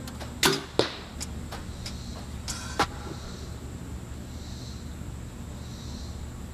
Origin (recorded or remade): recorded